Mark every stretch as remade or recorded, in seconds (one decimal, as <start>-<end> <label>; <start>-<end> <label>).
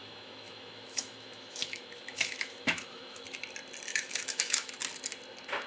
0.0-3.4 remade; 3.4-3.9 recorded; 3.9-4.7 remade; 4.7-5.7 recorded